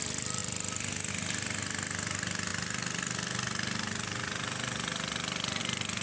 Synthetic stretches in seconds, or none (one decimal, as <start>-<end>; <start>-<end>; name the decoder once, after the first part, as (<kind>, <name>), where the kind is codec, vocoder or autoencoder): none